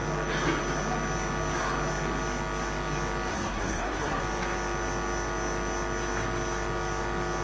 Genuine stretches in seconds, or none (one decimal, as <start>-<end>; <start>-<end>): 0.0-3.3; 4.2-7.4